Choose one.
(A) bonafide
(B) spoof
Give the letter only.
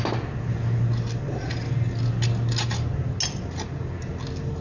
A